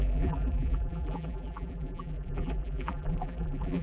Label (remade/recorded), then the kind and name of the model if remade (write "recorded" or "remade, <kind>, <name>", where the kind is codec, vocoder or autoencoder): remade, vocoder, BigVGAN v2